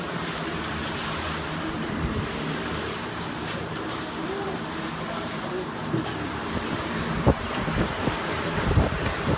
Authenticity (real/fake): fake